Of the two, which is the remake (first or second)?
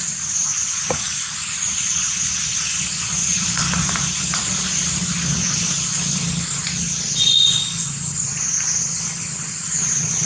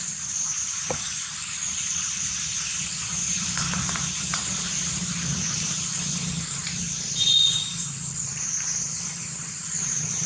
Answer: second